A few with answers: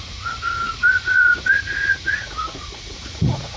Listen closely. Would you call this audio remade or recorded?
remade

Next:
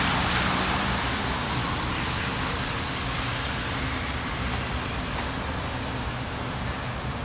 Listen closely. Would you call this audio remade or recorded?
recorded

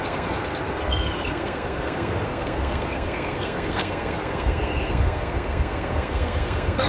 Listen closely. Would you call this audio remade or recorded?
remade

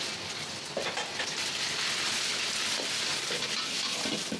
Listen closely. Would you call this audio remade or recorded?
recorded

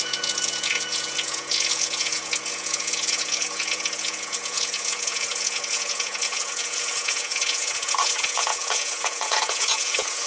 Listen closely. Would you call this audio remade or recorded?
remade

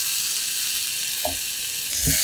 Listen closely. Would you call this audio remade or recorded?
recorded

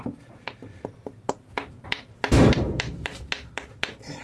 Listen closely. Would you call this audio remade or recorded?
remade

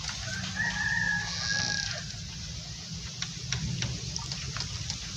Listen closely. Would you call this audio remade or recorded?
recorded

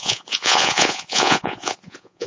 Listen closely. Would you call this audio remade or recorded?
remade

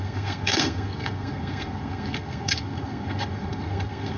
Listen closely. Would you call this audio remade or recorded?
remade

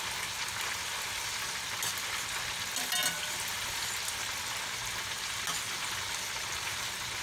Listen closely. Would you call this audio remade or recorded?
recorded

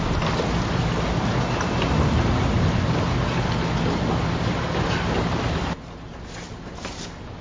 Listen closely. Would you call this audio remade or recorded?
recorded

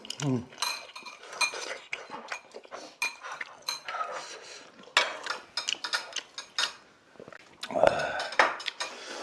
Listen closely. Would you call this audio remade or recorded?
recorded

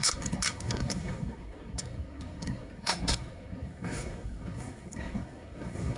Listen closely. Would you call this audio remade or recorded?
remade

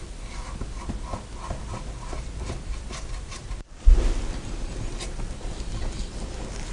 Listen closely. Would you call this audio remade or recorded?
remade